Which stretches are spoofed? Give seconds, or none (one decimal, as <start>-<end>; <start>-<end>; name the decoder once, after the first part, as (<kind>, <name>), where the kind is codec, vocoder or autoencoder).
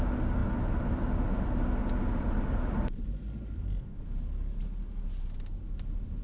none